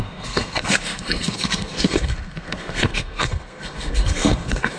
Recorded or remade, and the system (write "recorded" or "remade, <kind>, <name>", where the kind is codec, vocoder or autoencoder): remade, codec, SNAC